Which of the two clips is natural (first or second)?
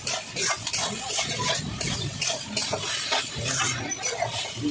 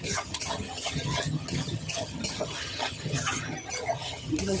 first